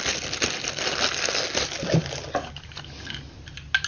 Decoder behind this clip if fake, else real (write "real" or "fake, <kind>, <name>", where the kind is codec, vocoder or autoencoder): real